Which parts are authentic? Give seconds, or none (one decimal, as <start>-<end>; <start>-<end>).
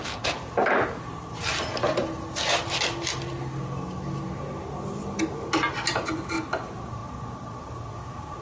0.0-8.4